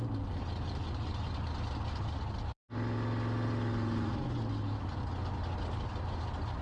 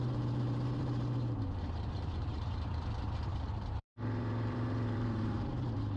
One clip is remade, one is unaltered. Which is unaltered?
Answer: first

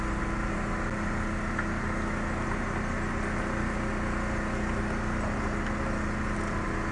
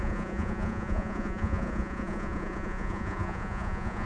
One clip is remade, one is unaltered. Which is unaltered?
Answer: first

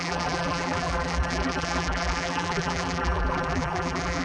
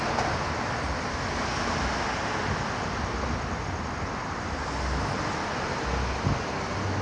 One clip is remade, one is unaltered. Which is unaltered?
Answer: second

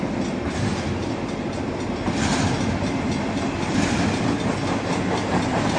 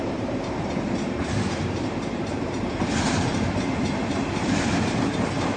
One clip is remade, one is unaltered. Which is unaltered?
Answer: first